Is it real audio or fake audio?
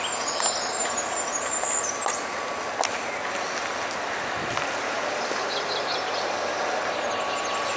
real